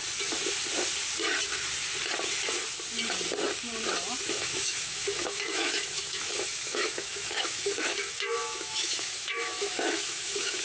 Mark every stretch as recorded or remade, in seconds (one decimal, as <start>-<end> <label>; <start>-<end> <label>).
0.0-4.3 recorded; 4.3-10.6 remade